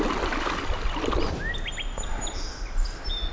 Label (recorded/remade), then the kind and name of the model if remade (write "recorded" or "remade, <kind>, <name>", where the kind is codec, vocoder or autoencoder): recorded